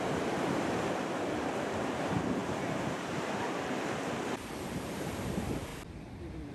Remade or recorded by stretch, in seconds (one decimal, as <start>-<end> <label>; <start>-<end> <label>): 0.0-5.7 remade; 5.7-6.5 recorded